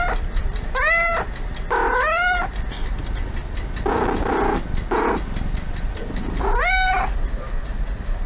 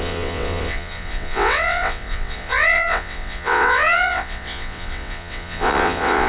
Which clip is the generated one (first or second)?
second